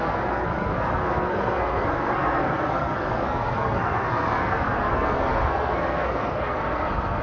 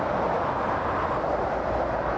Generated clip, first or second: first